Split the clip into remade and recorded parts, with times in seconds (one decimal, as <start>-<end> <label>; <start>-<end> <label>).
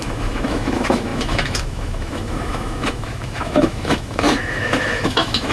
0.0-5.5 remade